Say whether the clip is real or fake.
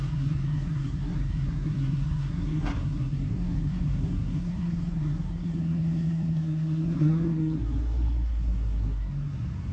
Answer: fake